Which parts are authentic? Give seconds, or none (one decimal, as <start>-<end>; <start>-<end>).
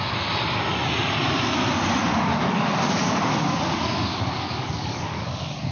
0.0-2.1